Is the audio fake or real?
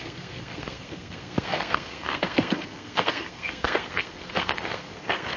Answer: fake